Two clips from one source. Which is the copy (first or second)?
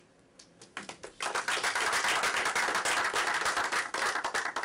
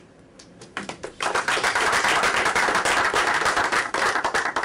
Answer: second